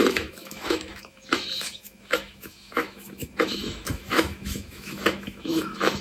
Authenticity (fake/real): fake